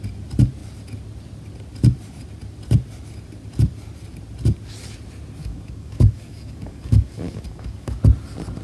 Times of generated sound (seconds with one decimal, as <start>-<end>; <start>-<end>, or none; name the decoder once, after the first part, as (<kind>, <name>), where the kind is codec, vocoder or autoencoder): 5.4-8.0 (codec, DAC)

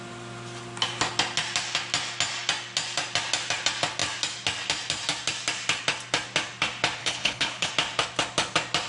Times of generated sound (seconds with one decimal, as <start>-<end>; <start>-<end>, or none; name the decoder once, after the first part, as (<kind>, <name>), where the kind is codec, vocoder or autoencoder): 7.0-7.7 (codec, HILCodec)

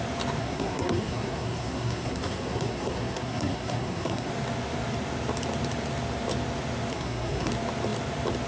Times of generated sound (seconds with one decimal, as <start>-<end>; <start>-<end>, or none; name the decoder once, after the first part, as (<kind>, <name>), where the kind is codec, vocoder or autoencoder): 0.4-4.3 (codec, SNAC); 6.9-7.5

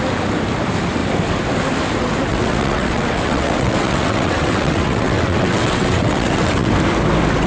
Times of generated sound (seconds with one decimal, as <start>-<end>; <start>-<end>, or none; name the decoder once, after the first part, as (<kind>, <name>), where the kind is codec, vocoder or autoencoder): 2.3-6.7 (vocoder, WaveNeXt)